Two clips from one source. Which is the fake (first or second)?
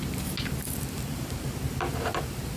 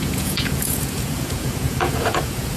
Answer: second